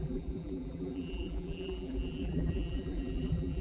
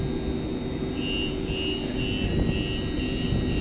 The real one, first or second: second